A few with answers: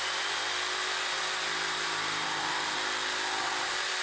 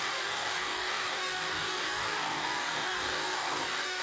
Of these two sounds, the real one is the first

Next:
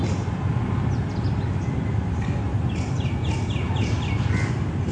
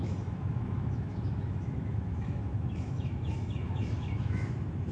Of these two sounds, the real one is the first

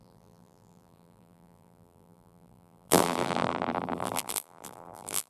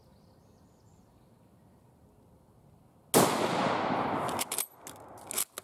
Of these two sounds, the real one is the second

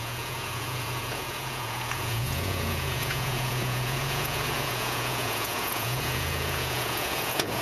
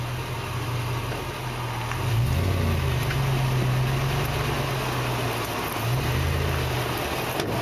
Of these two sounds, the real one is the second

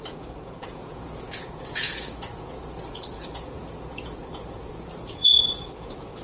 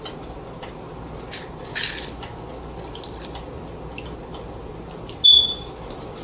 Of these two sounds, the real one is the second